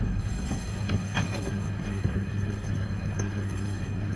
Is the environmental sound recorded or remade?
remade